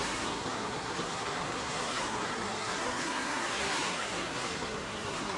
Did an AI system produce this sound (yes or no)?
yes